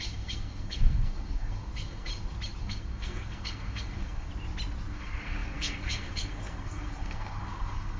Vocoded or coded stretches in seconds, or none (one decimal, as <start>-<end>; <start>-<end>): 0.0-2.1; 2.6-4.3; 4.9-8.0